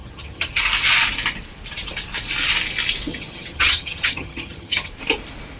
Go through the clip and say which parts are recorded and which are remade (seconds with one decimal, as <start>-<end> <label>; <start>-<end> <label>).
0.0-0.6 remade; 0.6-3.1 recorded; 3.1-4.9 remade; 4.9-5.6 recorded